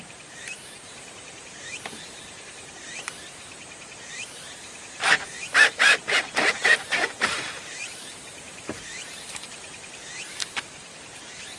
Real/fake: fake